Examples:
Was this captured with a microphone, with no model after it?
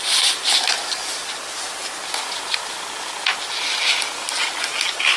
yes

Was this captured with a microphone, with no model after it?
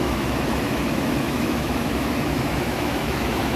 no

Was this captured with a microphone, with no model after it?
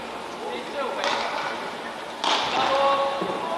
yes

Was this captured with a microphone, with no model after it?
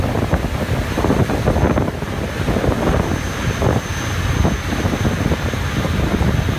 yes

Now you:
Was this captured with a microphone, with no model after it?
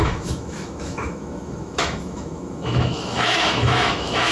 no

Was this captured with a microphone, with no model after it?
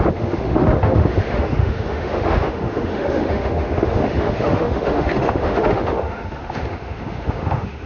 no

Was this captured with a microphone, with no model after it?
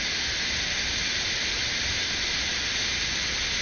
yes